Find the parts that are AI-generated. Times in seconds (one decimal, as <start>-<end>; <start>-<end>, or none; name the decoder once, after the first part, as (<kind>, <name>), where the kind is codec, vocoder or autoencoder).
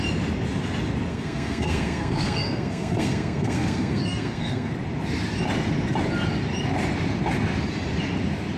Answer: 1.1-4.7 (codec, SNAC)